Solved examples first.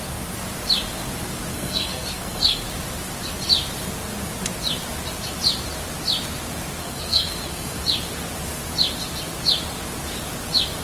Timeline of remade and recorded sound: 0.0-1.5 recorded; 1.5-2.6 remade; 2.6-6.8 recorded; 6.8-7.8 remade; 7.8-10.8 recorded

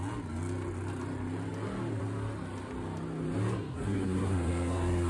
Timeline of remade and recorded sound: 0.0-3.7 recorded; 3.7-5.1 remade

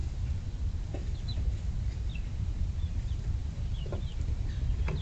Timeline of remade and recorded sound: 0.0-5.0 recorded

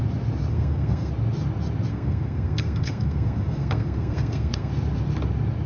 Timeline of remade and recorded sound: 0.0-0.5 recorded; 0.5-1.1 remade; 1.1-1.9 recorded; 1.9-4.7 remade; 4.7-5.7 recorded

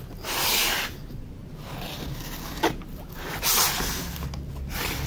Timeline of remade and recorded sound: 0.0-5.1 recorded

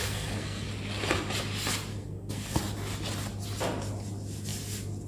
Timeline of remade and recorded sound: 0.0-0.7 remade; 0.7-1.9 recorded; 1.9-2.6 remade; 2.6-5.1 recorded